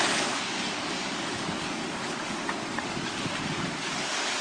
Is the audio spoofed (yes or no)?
yes